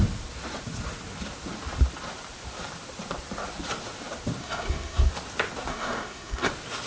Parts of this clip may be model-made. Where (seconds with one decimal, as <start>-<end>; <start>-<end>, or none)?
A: 4.4-5.1; 5.7-6.5